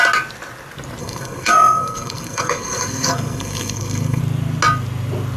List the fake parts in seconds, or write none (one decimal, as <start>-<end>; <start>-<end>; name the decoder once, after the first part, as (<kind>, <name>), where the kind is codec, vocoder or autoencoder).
1.0-4.2 (codec, SNAC)